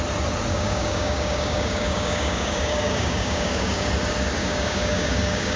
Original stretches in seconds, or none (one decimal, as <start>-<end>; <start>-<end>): 0.0-0.5; 3.9-4.4